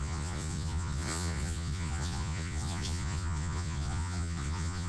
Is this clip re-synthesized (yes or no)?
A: yes